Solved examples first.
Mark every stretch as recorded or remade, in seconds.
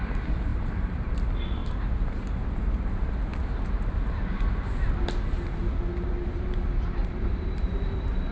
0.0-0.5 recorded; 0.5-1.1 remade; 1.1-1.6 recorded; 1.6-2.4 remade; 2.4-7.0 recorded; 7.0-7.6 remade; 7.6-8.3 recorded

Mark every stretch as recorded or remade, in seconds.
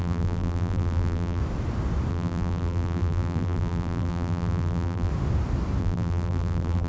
0.0-1.4 remade; 1.4-2.1 recorded; 2.1-5.1 remade; 5.1-5.8 recorded; 5.8-6.9 remade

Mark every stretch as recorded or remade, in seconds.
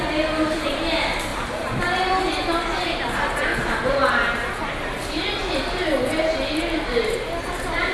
0.0-1.3 recorded; 1.3-2.2 remade; 2.2-7.9 recorded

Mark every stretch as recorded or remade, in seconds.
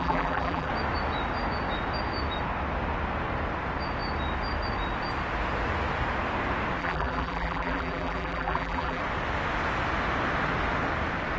0.0-0.7 remade; 0.7-6.8 recorded; 6.8-9.0 remade; 9.0-11.4 recorded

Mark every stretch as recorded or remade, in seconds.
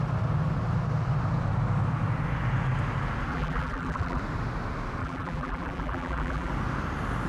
0.0-3.3 recorded; 3.3-4.2 remade; 4.2-5.0 recorded; 5.0-6.5 remade; 6.5-7.3 recorded